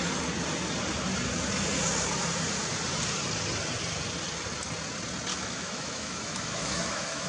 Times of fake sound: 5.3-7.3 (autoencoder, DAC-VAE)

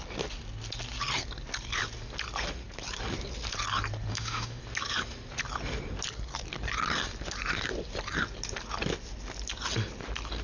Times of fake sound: 4.1-4.6 (autoencoder, DAC-VAE)

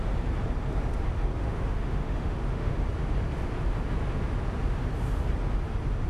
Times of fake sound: 1.4-2.8 (autoencoder, DAC-VAE)